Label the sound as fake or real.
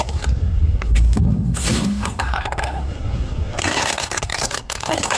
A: fake